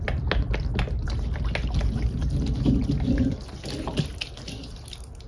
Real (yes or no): yes